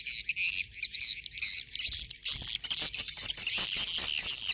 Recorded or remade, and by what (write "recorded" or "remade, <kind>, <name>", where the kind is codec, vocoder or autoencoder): recorded